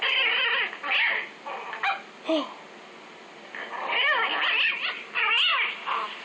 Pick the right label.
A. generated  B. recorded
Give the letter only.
B